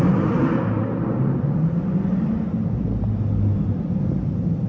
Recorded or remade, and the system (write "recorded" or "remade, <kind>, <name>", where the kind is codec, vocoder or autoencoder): recorded